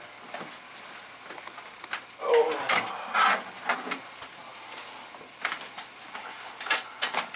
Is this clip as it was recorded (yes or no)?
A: yes